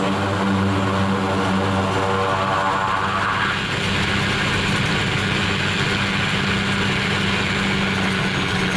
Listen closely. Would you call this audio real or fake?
real